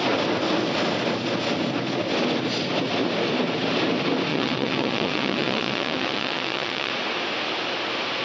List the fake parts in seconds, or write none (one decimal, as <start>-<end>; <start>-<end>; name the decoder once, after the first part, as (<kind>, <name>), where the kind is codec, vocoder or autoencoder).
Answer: 4.3-6.9 (vocoder, WaveNeXt)